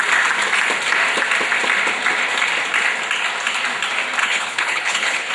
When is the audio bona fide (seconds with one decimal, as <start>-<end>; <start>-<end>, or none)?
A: 0.0-4.2